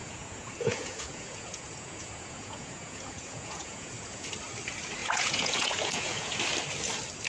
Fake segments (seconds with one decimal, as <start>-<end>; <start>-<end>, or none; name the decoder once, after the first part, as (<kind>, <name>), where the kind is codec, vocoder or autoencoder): 0.0-4.3 (vocoder, Vocos); 5.0-6.4